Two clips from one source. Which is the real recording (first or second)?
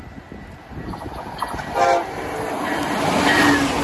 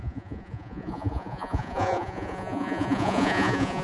first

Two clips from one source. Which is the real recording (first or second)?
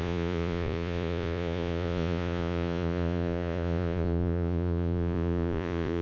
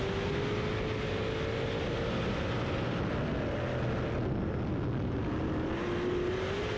second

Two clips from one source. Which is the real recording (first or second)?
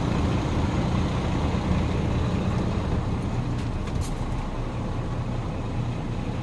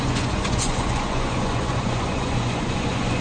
first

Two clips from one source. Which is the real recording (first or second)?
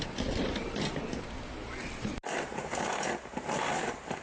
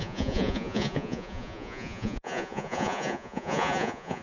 first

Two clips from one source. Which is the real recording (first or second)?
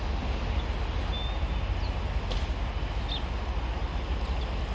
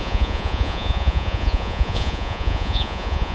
first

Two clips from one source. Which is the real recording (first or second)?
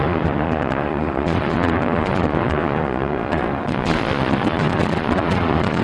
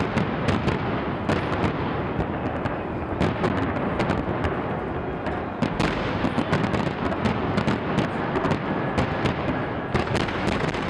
second